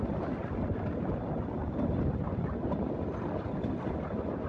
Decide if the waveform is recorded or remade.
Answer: recorded